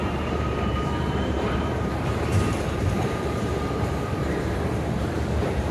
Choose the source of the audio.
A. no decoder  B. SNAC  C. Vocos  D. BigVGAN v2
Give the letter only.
D